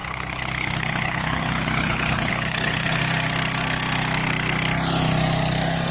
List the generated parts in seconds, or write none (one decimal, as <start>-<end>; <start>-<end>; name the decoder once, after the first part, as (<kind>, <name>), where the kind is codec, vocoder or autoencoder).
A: 0.0-3.0 (codec, HILCodec)